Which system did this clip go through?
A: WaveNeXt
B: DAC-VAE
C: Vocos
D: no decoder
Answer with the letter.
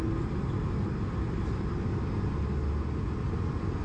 D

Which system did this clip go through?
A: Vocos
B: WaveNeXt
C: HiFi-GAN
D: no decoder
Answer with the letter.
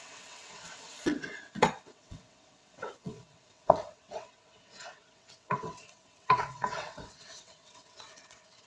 B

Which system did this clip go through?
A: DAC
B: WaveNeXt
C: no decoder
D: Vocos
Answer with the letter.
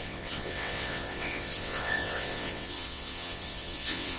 B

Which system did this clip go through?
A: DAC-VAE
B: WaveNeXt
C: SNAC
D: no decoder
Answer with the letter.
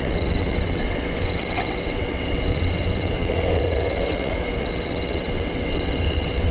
B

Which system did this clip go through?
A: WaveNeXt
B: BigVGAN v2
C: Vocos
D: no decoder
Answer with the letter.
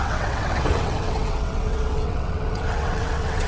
A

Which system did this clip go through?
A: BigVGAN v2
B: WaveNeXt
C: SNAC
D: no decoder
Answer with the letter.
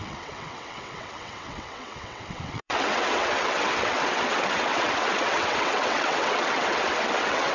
B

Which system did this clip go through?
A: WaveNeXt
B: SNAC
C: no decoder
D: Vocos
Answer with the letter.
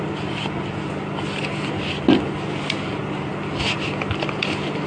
C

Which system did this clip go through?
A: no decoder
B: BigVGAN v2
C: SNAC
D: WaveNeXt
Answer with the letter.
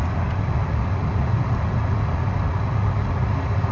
A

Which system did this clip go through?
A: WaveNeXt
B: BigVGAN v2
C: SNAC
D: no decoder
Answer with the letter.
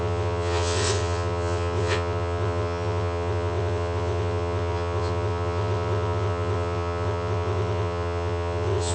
A